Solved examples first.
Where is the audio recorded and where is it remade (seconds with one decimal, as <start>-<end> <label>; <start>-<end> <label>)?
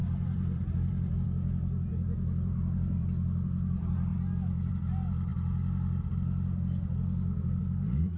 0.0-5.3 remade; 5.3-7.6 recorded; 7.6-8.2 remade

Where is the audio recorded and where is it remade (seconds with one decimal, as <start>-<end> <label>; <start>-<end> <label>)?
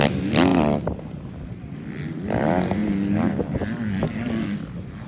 0.0-5.1 remade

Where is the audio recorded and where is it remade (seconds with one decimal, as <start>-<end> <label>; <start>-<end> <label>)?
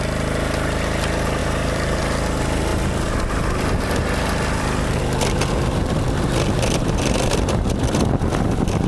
0.0-1.4 recorded; 1.4-2.0 remade; 2.0-8.9 recorded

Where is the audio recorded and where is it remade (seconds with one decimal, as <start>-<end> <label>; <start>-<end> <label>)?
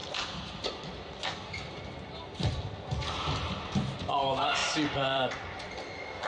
0.0-4.6 recorded; 4.6-6.3 remade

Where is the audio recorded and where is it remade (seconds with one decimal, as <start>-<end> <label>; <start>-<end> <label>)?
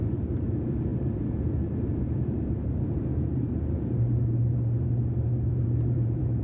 0.0-6.4 remade